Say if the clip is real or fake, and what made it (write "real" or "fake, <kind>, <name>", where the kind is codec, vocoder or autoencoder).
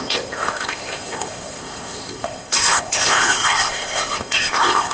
fake, codec, ZipCodec